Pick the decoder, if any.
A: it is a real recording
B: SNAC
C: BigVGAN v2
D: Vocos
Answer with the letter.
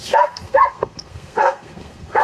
B